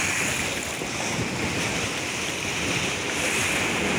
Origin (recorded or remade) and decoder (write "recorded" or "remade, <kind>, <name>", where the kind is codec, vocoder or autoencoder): recorded